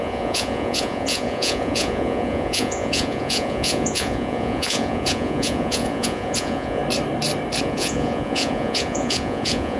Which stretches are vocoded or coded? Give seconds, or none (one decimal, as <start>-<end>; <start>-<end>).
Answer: 0.0-6.8; 7.6-9.8